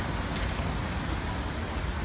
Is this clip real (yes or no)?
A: yes